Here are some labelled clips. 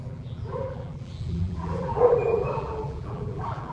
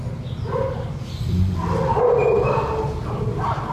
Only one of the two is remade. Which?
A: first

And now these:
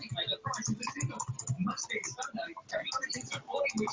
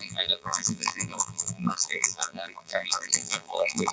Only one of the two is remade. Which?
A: second